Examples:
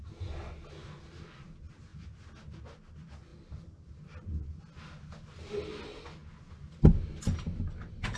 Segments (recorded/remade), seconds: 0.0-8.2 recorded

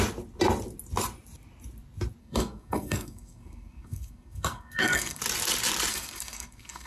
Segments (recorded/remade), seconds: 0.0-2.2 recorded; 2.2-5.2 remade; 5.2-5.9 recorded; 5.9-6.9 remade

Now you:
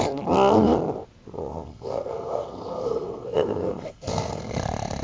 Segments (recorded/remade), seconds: 0.0-1.5 recorded; 1.5-4.5 remade; 4.5-5.0 recorded

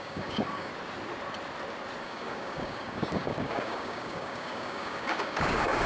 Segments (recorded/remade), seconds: 0.0-0.7 remade; 0.7-2.0 recorded; 2.0-5.9 remade

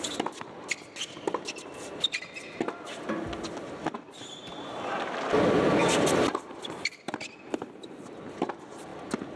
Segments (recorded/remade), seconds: 0.0-5.8 recorded; 5.8-7.8 remade; 7.8-9.4 recorded

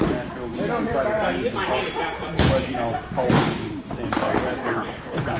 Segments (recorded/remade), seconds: 0.0-4.6 recorded; 4.6-5.4 remade

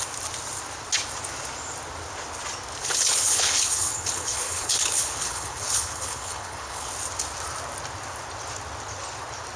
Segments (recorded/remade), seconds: 0.0-2.8 recorded; 2.8-6.9 remade; 6.9-9.6 recorded

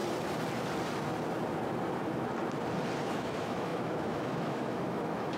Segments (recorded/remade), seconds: 0.0-3.1 recorded; 3.1-5.4 remade